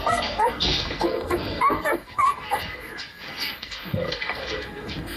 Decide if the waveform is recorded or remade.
remade